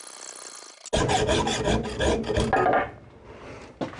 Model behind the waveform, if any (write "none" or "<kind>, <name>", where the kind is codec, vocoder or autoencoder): none